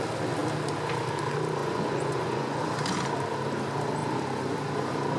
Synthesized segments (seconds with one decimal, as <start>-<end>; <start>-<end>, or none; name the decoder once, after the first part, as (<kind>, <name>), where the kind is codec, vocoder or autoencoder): 1.6-2.6 (vocoder, Vocos)